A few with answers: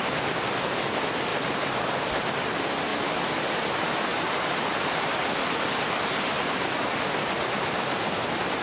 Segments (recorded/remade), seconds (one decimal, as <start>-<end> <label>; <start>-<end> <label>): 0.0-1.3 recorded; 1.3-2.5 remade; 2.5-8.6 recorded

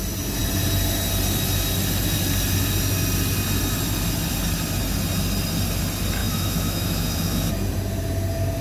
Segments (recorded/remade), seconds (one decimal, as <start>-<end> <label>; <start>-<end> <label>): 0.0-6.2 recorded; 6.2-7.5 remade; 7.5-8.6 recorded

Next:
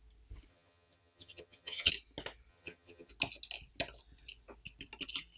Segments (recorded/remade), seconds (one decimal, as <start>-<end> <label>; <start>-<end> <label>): 0.0-0.5 recorded; 0.5-1.9 remade; 1.9-2.5 recorded; 2.5-3.1 remade; 3.1-5.4 recorded

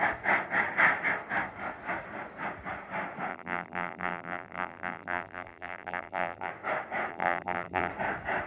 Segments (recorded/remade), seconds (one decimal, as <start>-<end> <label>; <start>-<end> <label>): 0.0-3.3 recorded; 3.3-6.5 remade; 6.5-7.1 recorded; 7.1-7.9 remade; 7.9-8.5 recorded

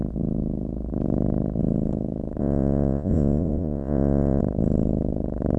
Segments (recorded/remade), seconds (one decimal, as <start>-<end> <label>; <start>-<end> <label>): 0.0-2.4 recorded; 2.4-4.4 remade; 4.4-5.6 recorded

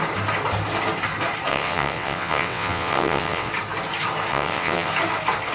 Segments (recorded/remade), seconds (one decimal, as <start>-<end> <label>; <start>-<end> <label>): 0.0-1.5 recorded; 1.5-3.5 remade; 3.5-4.3 recorded; 4.3-4.9 remade; 4.9-5.5 recorded

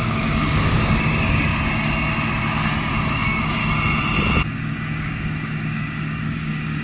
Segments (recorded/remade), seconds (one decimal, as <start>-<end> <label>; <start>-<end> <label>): 0.0-1.5 remade; 1.5-3.1 recorded; 3.1-3.6 remade; 3.6-4.5 recorded; 4.5-6.8 remade

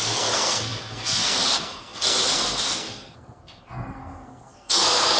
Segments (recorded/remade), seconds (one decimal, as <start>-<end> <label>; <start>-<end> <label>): 0.0-5.2 remade